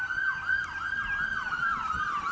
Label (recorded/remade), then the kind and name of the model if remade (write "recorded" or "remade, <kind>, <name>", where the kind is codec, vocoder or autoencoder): recorded